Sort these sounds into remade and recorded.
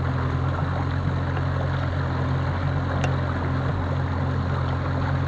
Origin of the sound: recorded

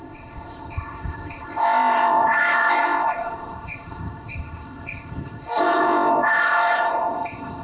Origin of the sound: remade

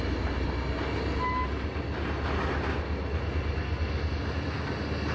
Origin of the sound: recorded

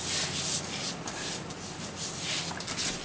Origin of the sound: recorded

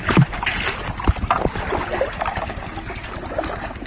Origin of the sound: recorded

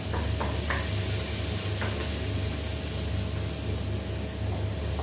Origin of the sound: recorded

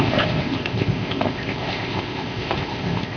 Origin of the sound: remade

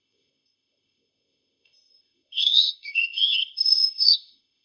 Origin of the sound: remade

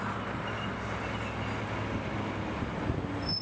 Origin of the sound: recorded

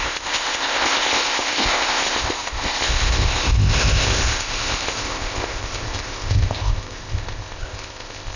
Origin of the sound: remade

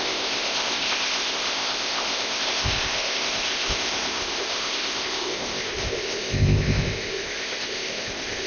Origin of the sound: remade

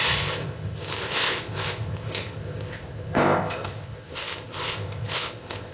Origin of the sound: remade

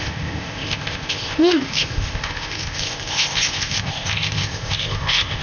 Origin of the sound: remade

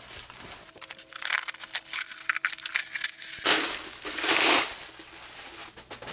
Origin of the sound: recorded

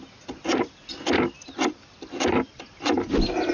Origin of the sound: recorded